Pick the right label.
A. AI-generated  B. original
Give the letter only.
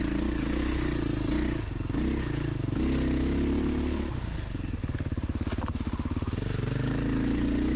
B